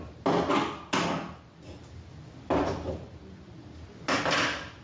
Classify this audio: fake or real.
real